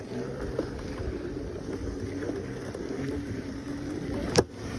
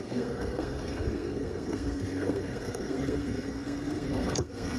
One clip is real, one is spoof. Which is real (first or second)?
first